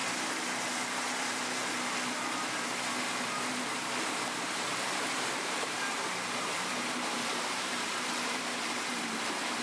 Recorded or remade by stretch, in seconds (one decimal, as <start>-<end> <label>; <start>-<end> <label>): 0.0-4.0 recorded; 4.0-9.6 remade